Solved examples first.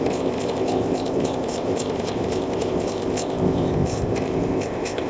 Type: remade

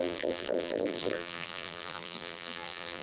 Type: remade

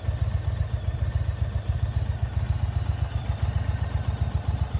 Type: recorded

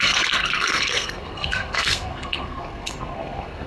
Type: remade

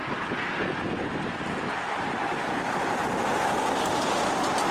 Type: recorded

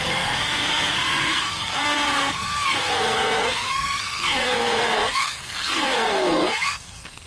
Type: remade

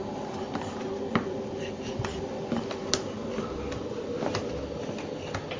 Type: recorded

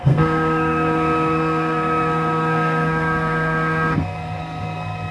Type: remade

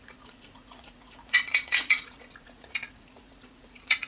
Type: remade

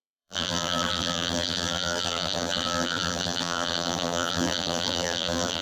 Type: remade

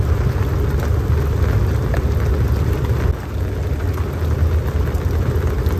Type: recorded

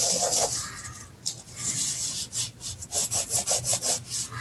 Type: recorded